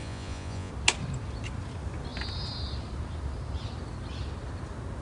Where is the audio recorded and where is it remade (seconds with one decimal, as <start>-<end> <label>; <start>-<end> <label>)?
0.0-0.7 remade; 0.7-5.0 recorded